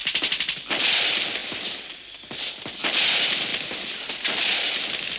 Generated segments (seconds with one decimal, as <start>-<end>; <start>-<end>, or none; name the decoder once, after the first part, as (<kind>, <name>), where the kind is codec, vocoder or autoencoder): none